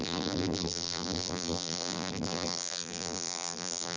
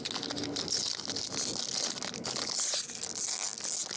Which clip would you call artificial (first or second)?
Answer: first